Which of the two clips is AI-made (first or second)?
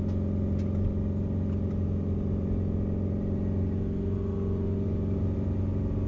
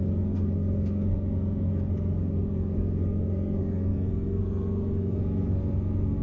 second